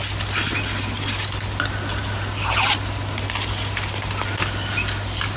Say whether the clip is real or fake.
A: real